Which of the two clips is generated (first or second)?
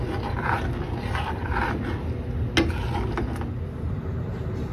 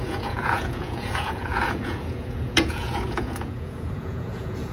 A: second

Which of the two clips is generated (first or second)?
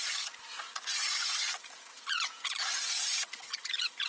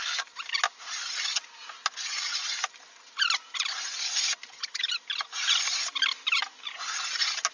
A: first